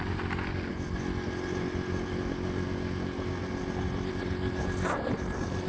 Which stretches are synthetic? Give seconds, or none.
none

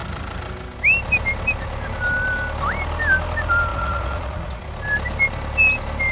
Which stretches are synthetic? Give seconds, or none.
3.7-4.6 (vocoder, Vocos)

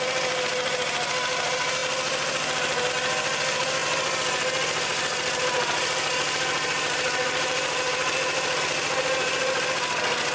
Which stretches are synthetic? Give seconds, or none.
none